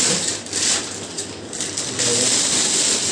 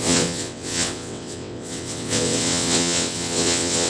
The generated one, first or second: second